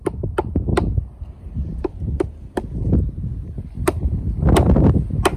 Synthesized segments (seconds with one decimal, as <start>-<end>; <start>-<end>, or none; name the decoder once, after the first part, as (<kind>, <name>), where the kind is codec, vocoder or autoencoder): none